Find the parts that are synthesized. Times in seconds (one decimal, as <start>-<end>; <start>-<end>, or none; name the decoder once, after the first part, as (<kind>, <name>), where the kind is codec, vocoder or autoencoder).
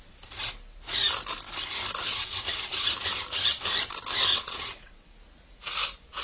4.3-5.1 (vocoder, WaveNeXt)